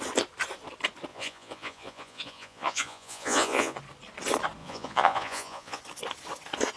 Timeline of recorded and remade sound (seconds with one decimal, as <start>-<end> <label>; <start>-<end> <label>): 0.0-1.1 recorded; 1.1-3.8 remade; 3.8-4.6 recorded; 4.6-5.8 remade; 5.8-6.8 recorded